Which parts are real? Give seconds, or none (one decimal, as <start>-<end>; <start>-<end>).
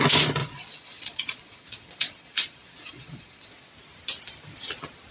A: 0.0-0.4; 3.5-5.1